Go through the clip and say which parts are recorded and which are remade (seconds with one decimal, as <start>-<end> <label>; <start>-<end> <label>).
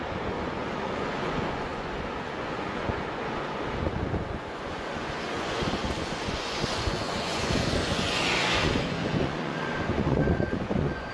0.0-11.1 remade